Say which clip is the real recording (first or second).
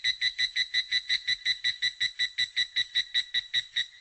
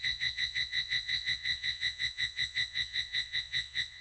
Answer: first